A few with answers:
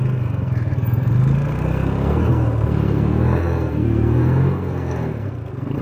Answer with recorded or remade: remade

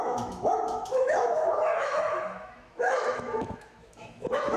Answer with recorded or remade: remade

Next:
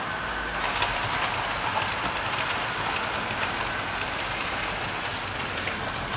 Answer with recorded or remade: recorded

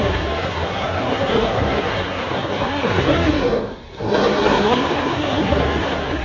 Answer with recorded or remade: remade